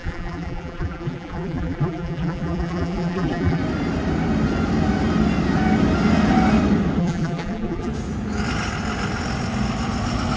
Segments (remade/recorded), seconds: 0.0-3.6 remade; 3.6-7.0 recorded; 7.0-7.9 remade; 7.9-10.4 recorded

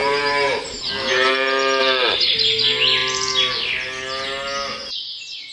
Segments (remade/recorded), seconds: 0.0-1.3 remade; 1.3-1.8 recorded; 1.8-2.3 remade; 2.3-5.5 recorded

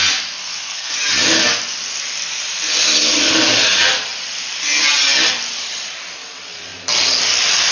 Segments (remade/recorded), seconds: 0.0-0.4 recorded; 0.4-0.9 remade; 0.9-7.7 recorded